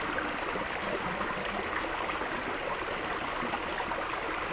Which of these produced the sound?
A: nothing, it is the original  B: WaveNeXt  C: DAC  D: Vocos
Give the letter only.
A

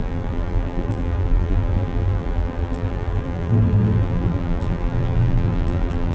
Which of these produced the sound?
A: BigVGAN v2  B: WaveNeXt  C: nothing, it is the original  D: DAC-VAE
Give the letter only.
A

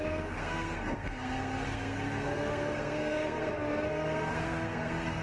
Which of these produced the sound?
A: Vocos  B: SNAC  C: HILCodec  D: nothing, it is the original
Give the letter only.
B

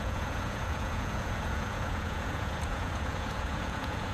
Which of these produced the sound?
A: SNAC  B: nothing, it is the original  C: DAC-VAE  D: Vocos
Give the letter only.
D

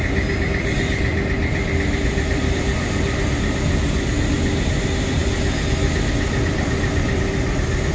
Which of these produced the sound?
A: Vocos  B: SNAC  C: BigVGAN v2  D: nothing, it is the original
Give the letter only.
D